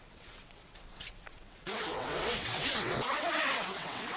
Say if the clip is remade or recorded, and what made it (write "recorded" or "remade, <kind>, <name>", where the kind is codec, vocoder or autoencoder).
remade, vocoder, WaveNeXt